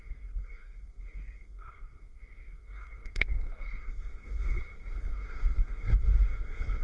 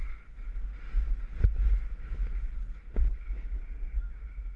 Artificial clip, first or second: first